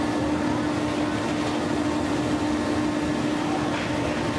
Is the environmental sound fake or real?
real